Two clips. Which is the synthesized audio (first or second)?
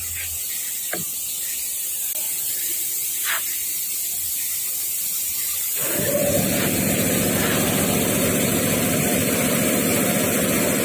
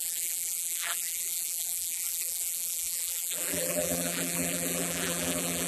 second